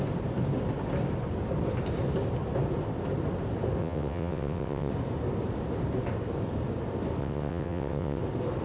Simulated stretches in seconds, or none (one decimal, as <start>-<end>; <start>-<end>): 3.8-4.9; 7.2-8.2